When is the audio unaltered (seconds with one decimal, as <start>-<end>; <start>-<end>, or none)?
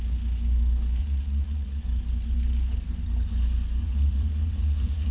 0.0-1.0; 1.8-3.8